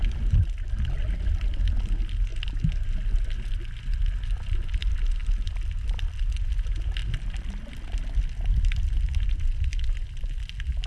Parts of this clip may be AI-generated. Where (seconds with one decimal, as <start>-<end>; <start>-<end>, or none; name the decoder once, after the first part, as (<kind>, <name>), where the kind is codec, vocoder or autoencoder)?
none

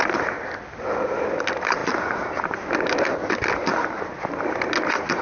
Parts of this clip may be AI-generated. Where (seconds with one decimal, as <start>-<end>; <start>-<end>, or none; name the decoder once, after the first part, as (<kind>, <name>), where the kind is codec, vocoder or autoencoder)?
none

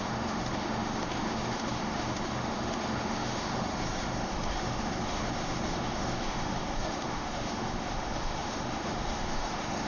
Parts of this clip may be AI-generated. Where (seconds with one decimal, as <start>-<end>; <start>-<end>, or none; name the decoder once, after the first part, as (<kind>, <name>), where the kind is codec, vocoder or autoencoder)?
0.0-9.9 (autoencoder, DAC-VAE)